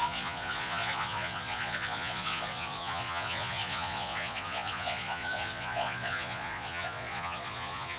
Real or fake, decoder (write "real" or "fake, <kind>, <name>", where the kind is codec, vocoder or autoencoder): fake, vocoder, Vocos